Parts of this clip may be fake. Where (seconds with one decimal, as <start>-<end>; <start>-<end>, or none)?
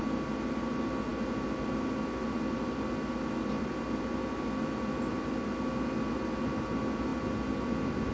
none